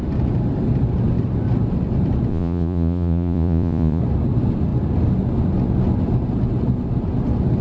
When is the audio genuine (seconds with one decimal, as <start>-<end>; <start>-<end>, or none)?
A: 0.0-2.3; 4.0-7.6